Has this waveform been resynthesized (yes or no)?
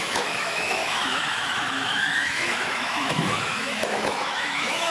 yes